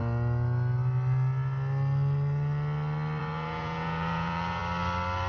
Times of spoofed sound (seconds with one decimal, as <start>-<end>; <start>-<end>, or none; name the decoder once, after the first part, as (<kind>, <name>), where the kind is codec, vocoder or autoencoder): 3.2-4.6 (vocoder, Vocos)